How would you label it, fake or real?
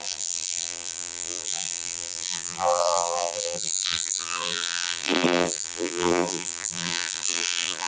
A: fake